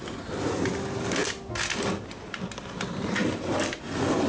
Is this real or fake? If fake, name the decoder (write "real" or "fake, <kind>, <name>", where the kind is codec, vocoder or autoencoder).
real